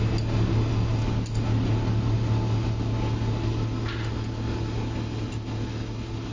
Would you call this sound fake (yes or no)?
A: no